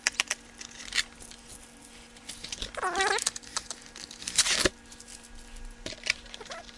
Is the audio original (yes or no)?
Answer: yes